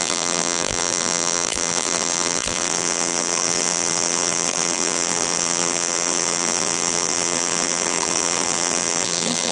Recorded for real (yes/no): no